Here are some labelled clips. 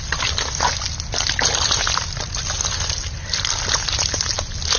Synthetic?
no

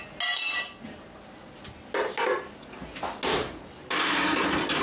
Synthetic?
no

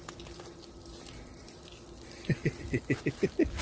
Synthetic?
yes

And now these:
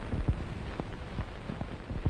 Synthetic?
no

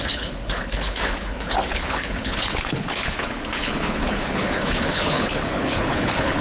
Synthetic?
yes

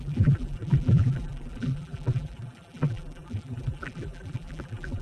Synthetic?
yes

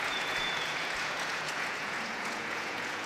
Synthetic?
yes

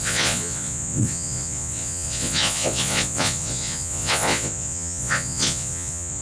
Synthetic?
yes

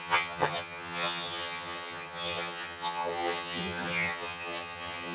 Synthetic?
yes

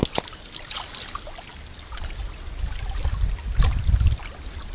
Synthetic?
no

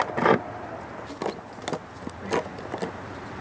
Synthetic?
no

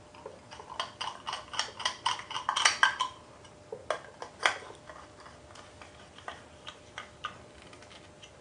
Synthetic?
no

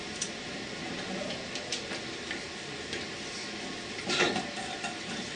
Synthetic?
no